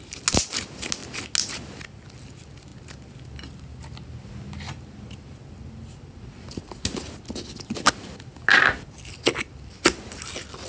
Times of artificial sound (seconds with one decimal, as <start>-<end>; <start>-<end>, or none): none